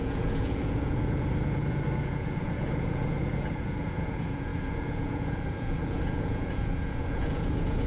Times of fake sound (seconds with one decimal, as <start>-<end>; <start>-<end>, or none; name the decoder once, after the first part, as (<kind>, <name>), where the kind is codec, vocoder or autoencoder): 0.0-7.9 (vocoder, Vocos)